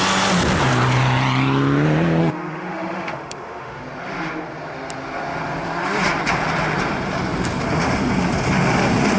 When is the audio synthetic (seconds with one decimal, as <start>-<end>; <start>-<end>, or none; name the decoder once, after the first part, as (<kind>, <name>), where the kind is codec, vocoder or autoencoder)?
2.2-3.8 (autoencoder, DAC-VAE)

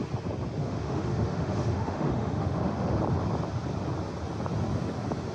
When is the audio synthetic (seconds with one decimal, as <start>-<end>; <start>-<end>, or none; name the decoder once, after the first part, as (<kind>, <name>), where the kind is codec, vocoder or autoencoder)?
0.6-3.0 (autoencoder, DAC-VAE)

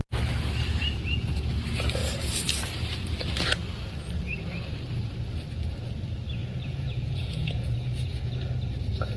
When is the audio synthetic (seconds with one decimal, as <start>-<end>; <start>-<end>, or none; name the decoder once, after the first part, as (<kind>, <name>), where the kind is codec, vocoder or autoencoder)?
0.8-1.5 (vocoder, Vocos); 6.4-8.3